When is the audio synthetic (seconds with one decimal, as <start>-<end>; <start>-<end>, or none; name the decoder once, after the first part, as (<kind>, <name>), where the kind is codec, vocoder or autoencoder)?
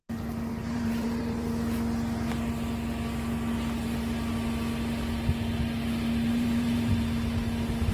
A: 0.5-1.5 (vocoder, BigVGAN v2); 6.3-6.9